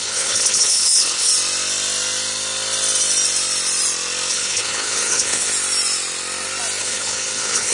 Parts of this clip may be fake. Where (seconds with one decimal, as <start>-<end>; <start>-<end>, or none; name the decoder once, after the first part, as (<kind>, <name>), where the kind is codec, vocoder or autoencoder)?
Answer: 0.0-1.3 (codec, HILCodec); 4.3-5.5; 6.8-7.7